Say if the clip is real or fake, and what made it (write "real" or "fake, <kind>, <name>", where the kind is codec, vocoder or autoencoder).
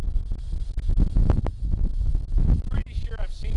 real